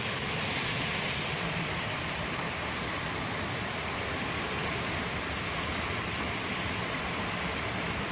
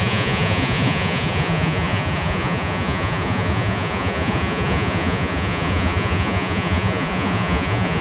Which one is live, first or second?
first